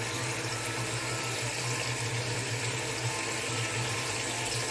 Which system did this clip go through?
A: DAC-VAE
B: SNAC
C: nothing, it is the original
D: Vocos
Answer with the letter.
C